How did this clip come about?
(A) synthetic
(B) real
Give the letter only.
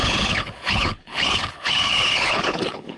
A